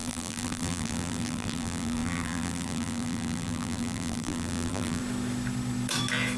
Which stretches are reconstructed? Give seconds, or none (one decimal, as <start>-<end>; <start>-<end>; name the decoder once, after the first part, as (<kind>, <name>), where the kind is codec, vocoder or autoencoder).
0.0-5.0 (vocoder, BigVGAN v2)